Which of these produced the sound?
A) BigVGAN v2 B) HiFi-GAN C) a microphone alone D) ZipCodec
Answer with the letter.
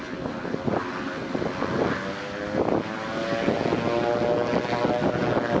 C